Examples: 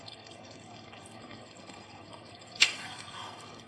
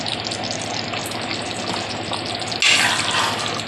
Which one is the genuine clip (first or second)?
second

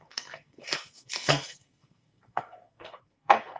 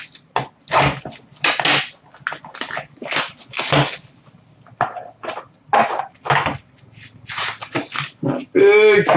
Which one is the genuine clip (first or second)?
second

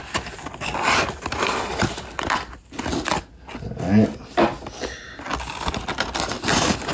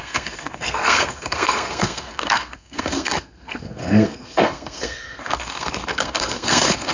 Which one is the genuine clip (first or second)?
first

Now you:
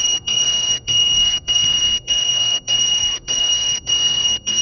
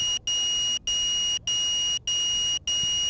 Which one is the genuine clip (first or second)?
second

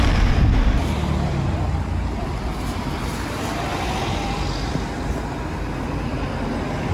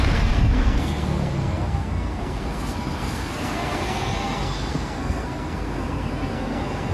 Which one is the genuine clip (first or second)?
first